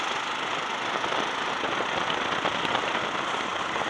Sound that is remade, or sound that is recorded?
recorded